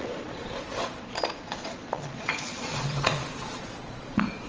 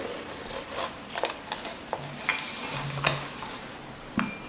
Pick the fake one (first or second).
first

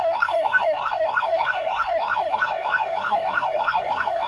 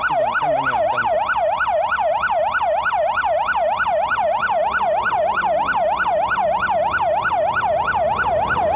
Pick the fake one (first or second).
first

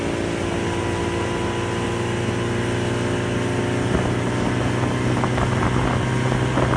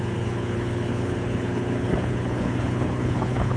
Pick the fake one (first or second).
second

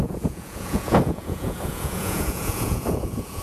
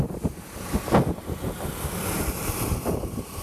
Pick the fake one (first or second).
first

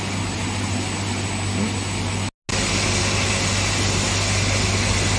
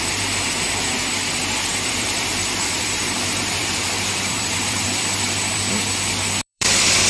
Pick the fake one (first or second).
second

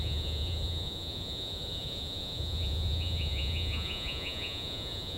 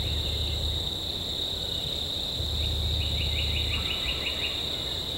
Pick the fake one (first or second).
first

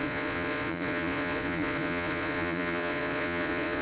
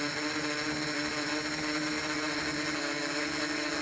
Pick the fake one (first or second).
first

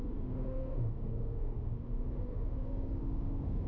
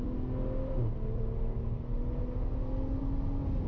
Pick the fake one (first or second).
first